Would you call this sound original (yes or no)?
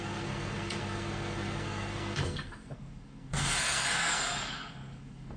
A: no